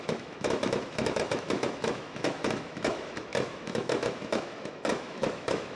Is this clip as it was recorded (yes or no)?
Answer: no